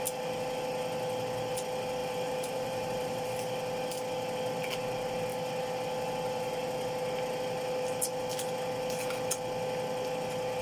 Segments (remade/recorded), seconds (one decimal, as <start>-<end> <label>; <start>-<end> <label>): 0.0-2.0 recorded; 2.0-3.3 remade; 3.3-10.6 recorded